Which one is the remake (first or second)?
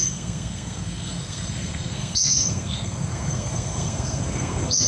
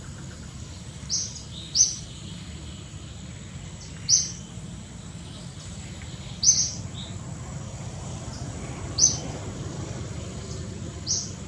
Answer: first